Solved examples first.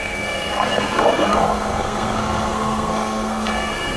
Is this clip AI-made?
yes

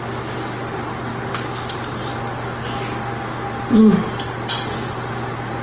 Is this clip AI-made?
no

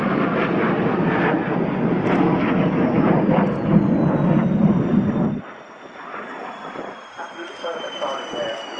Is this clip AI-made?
no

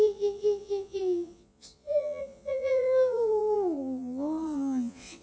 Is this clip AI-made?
yes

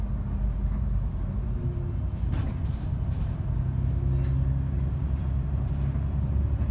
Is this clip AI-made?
no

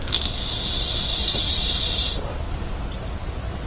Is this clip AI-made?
no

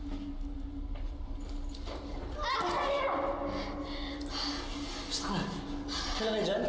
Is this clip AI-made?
no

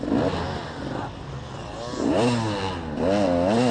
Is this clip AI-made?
no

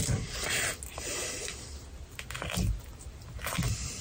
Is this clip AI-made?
no